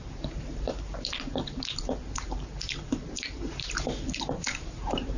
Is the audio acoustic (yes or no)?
no